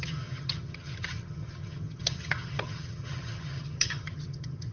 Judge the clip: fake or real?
fake